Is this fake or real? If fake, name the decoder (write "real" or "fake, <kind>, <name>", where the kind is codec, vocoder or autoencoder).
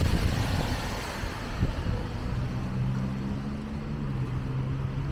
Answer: real